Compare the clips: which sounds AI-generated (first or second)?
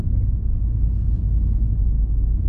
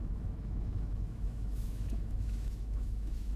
second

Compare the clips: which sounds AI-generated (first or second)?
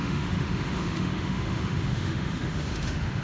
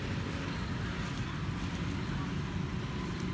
first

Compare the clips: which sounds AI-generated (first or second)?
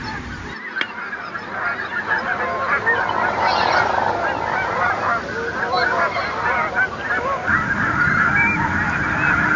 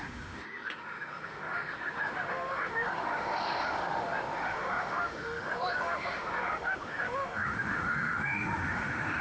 second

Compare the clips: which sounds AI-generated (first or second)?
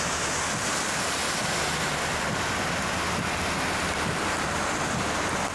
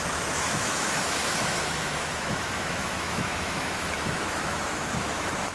second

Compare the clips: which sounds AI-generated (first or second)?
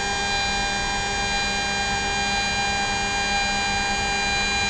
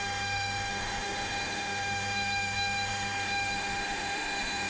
second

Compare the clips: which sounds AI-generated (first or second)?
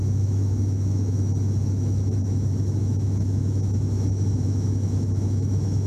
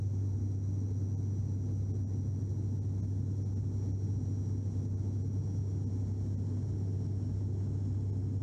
first